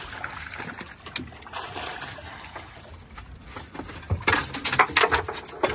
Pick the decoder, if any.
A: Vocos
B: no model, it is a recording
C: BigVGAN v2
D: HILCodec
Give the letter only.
B